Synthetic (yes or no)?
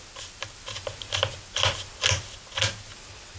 no